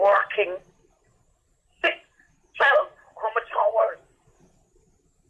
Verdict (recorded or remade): recorded